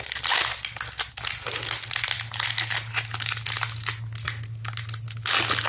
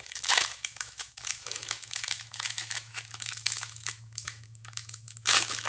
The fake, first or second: second